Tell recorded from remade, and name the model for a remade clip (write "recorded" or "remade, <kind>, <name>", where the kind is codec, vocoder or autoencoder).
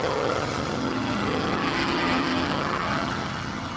remade, vocoder, HiFi-GAN